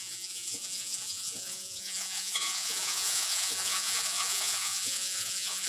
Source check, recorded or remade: remade